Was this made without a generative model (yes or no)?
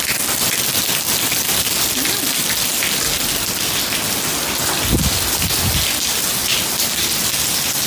yes